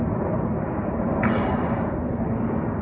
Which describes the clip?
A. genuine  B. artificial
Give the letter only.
A